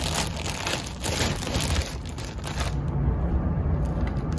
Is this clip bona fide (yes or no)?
yes